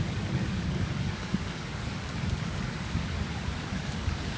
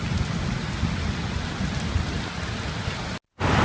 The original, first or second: second